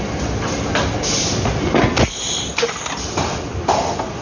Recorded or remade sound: recorded